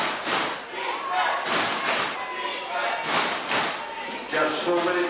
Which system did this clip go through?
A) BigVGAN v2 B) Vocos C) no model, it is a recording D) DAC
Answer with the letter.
C